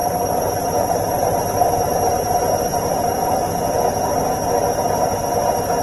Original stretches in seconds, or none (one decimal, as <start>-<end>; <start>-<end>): 3.5-5.8